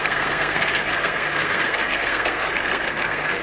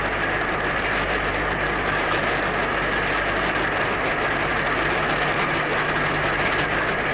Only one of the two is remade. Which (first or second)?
first